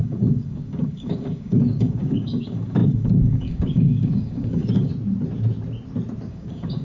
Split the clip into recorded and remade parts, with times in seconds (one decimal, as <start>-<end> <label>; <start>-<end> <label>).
0.0-4.9 remade; 4.9-6.3 recorded; 6.3-6.8 remade